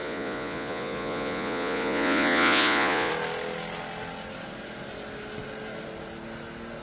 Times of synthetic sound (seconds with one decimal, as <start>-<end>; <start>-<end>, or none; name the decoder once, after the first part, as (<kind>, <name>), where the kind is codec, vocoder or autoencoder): 0.0-3.1 (vocoder, Vocos)